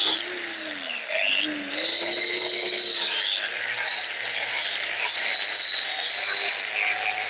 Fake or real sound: real